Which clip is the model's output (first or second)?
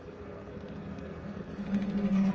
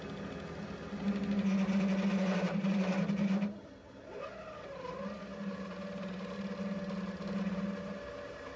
first